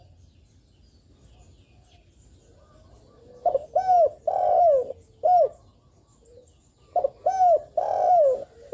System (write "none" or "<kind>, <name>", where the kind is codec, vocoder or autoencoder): none